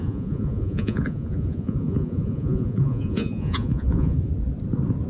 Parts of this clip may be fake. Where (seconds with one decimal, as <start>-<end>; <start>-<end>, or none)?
0.0-4.3